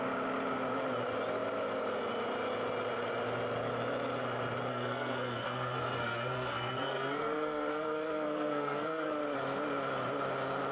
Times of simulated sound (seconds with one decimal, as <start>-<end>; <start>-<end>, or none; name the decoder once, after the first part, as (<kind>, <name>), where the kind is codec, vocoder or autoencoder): 4.7-9.2 (codec, SNAC)